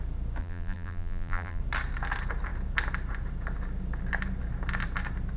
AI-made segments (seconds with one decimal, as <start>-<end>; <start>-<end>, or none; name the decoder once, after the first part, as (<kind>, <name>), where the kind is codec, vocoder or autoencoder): 0.4-1.6 (vocoder, BigVGAN v2)